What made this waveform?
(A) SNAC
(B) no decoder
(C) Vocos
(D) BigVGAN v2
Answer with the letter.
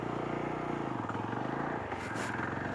B